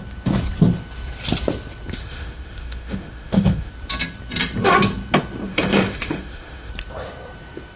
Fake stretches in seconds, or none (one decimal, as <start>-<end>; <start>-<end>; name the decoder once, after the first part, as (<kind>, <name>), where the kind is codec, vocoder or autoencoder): 2.0-3.7 (autoencoder, DAC-VAE); 5.5-6.7